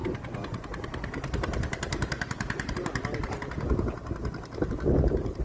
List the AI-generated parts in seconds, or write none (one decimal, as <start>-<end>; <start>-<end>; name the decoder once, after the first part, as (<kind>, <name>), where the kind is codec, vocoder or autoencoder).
0.0-2.7 (vocoder, BigVGAN v2)